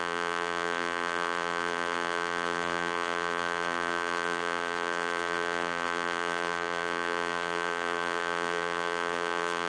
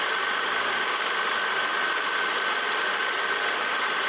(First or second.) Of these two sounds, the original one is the second